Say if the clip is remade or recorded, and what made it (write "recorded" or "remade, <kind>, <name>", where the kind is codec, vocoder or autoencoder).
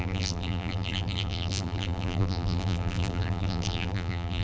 remade, vocoder, BigVGAN v2